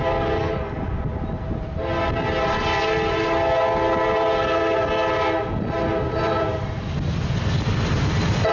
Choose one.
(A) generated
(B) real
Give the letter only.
B